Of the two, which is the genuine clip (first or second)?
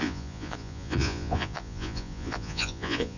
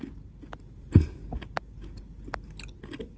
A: second